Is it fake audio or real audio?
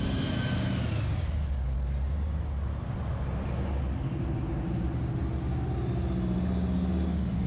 real